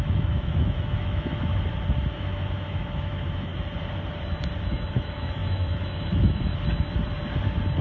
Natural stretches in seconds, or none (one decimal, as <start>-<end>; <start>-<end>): 1.5-2.1; 3.5-4.9; 6.5-7.8